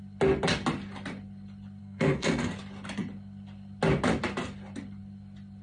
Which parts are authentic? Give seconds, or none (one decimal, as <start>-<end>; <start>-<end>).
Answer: 0.0-1.8; 2.5-5.6